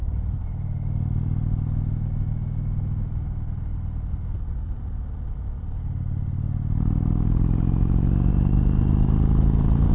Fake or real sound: real